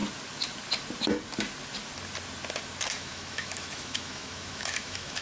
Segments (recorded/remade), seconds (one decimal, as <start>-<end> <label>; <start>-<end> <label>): 0.0-2.9 recorded; 2.9-5.2 remade